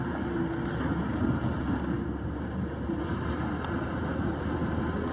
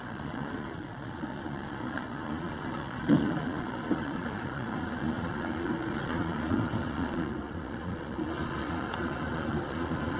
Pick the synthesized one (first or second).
second